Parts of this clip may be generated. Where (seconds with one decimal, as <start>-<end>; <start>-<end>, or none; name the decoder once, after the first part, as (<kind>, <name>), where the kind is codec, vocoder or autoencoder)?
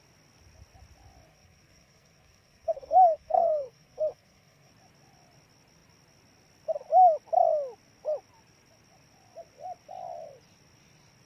1.3-4.7 (codec, SNAC)